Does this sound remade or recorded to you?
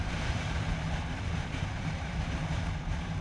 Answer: remade